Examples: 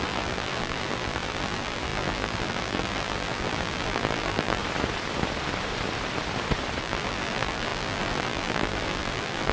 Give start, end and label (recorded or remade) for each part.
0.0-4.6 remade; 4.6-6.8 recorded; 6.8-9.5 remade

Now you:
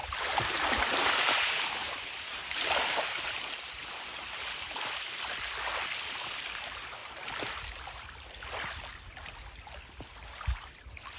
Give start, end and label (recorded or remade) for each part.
0.0-4.5 remade; 4.5-11.2 recorded

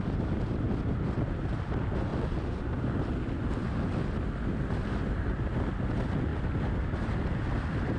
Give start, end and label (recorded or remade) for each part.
0.0-2.1 recorded; 2.1-5.7 remade; 5.7-6.3 recorded; 6.3-8.0 remade